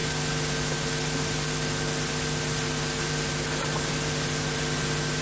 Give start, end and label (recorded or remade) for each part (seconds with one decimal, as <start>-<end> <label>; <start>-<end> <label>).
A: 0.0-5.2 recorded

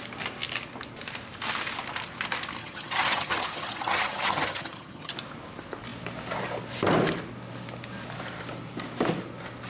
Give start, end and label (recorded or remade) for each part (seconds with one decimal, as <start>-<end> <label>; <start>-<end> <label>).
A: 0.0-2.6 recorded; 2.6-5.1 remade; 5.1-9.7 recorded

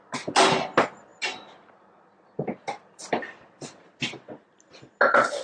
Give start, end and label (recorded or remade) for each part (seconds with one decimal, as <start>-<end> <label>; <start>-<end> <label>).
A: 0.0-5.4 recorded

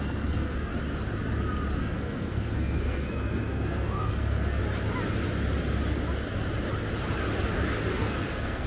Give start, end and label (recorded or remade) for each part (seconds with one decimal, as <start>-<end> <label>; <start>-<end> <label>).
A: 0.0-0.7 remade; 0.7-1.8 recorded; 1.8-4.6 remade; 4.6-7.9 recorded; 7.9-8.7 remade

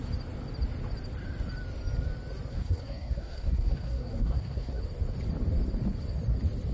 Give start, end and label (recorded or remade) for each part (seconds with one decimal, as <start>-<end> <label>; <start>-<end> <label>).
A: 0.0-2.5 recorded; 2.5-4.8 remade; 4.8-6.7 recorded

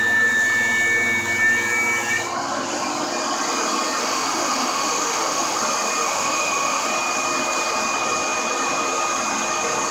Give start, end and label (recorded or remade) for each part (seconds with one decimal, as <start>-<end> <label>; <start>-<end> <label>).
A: 0.0-4.0 recorded; 4.0-5.6 remade; 5.6-6.0 recorded; 6.0-6.9 remade; 6.9-9.9 recorded

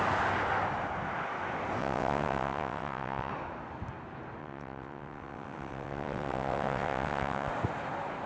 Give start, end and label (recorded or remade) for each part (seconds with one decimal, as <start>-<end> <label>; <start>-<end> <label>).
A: 0.0-1.8 recorded; 1.8-3.3 remade; 3.3-4.4 recorded; 4.4-7.5 remade; 7.5-8.3 recorded